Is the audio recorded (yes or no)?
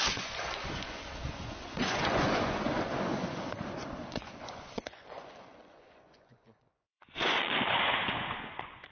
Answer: no